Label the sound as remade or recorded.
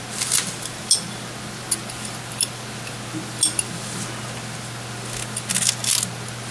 recorded